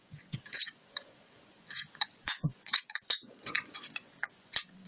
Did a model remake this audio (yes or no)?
yes